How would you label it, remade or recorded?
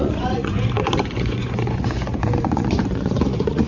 remade